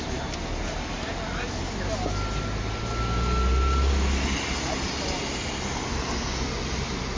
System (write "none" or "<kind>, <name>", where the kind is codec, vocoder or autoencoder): none